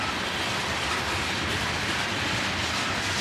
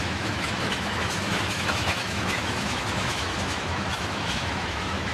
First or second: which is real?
first